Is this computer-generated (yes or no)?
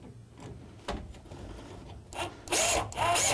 no